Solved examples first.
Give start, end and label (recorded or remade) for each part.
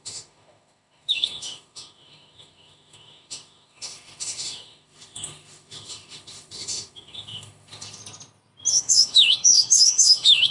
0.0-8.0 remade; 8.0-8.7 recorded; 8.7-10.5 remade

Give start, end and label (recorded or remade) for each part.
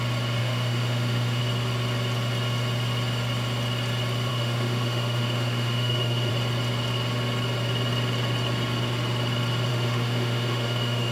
0.0-0.4 recorded; 0.4-1.4 remade; 1.4-4.3 recorded; 4.3-6.3 remade; 6.3-9.7 recorded; 9.7-11.1 remade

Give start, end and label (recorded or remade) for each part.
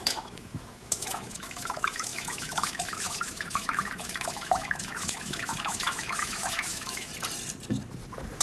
0.0-7.1 remade; 7.1-8.4 recorded